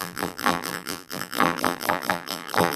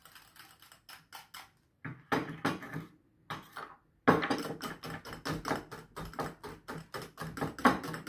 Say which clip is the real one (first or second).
second